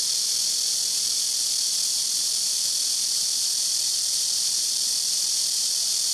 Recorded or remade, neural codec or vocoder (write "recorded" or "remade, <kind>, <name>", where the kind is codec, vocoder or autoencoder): recorded